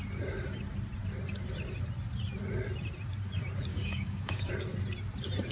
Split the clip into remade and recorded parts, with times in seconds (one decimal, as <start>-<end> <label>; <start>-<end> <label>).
0.0-3.7 recorded; 3.7-4.5 remade; 4.5-5.5 recorded